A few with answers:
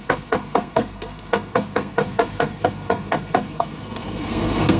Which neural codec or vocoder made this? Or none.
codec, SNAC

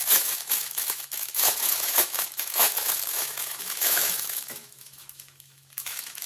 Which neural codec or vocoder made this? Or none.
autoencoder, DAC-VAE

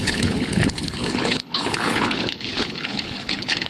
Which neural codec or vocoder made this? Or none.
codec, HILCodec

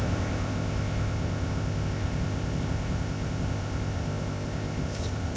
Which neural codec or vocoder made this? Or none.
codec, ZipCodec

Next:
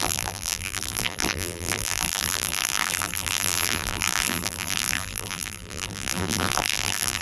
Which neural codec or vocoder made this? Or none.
vocoder, BigVGAN v2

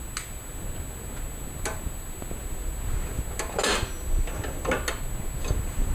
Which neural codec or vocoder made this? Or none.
none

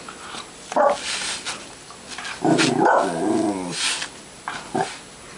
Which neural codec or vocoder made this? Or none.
none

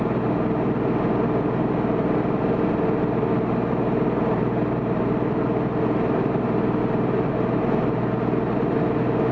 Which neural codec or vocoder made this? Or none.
none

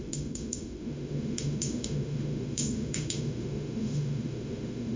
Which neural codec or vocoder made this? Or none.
autoencoder, DAC-VAE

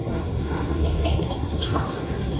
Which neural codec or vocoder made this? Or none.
codec, SNAC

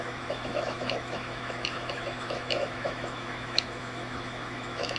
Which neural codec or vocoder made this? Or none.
autoencoder, DAC-VAE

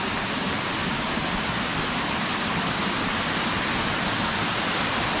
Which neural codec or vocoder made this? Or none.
none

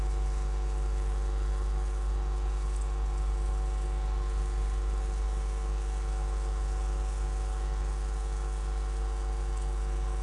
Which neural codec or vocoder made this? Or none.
codec, HILCodec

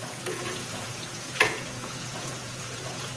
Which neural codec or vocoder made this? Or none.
vocoder, Vocos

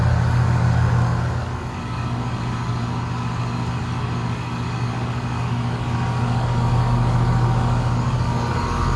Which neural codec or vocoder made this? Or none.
codec, DAC